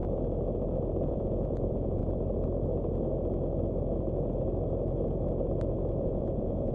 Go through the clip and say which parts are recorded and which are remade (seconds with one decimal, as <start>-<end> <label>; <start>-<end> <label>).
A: 0.0-1.1 recorded; 1.1-2.0 remade; 2.0-6.0 recorded; 6.0-6.7 remade